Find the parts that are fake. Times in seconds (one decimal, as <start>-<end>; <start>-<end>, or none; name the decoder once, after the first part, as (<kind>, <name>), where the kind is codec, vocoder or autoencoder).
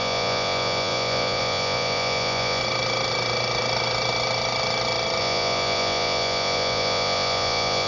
0.0-2.6 (vocoder, Vocos); 5.2-7.9